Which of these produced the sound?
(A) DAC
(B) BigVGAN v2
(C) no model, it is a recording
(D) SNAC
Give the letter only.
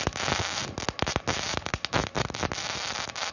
C